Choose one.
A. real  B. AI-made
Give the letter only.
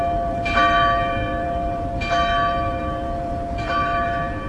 B